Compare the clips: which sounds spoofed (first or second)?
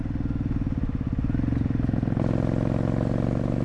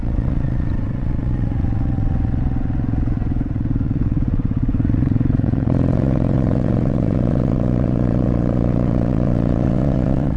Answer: second